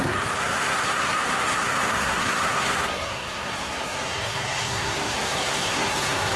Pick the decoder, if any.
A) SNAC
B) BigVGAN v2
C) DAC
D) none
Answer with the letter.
A